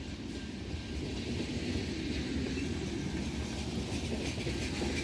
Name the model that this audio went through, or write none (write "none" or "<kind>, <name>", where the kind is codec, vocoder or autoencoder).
none